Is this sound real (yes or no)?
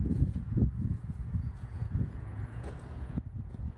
no